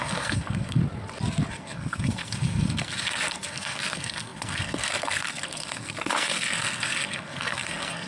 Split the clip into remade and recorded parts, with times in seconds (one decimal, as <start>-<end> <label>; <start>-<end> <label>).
0.0-0.8 remade; 0.8-1.5 recorded; 1.5-8.1 remade